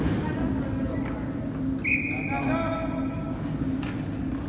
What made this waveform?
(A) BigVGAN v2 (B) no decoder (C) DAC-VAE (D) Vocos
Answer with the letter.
B